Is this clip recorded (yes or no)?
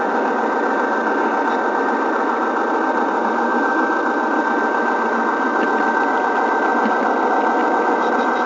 yes